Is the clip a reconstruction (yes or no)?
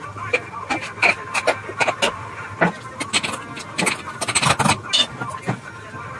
no